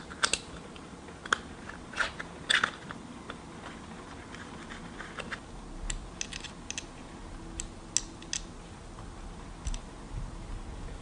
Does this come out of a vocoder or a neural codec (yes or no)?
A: no